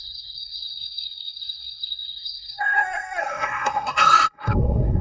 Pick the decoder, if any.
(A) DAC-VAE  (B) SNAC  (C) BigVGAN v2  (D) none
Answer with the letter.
B